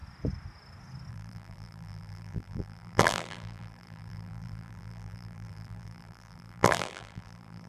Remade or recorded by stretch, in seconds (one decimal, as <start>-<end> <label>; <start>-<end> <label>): 0.0-1.1 recorded; 1.1-7.7 remade